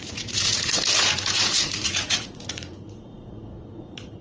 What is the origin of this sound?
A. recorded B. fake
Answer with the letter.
B